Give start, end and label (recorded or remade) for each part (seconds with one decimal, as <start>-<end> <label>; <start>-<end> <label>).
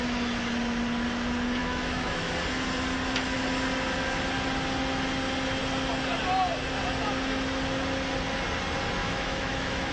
0.0-1.6 recorded; 1.6-2.3 remade; 2.3-9.0 recorded; 9.0-9.9 remade